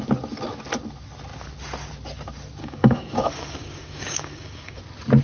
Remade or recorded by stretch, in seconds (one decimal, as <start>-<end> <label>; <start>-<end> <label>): 0.0-2.6 recorded; 2.6-4.8 remade; 4.8-5.2 recorded

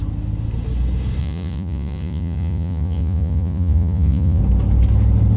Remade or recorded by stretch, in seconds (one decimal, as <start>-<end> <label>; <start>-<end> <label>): 0.0-1.2 recorded; 1.2-4.4 remade; 4.4-5.4 recorded

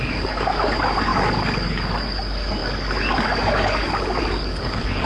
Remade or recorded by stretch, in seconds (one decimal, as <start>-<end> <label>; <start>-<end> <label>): 0.0-5.1 remade

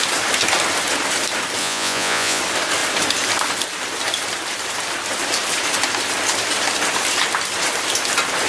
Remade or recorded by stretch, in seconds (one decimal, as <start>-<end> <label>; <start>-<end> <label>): 0.0-1.6 recorded; 1.6-2.4 remade; 2.4-8.5 recorded

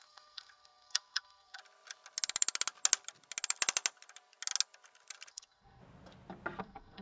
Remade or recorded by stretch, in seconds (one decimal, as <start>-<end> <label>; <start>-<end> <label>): 0.0-1.6 remade; 1.6-5.3 recorded; 5.3-5.8 remade; 5.8-6.6 recorded; 6.6-7.0 remade

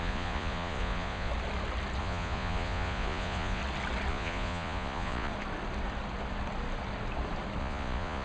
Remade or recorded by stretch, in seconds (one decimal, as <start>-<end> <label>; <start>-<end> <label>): 0.0-1.3 remade; 1.3-2.0 recorded; 2.0-3.6 remade; 3.6-4.1 recorded; 4.1-5.3 remade; 5.3-7.6 recorded; 7.6-8.2 remade

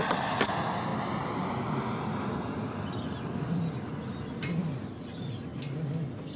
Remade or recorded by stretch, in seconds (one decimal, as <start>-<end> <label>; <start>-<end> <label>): 0.0-6.4 recorded